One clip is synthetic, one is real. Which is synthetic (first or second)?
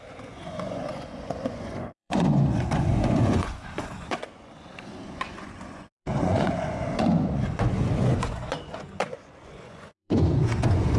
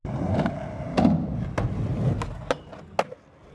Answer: first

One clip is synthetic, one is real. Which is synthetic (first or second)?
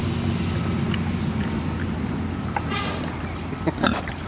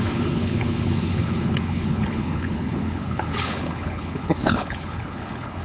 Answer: second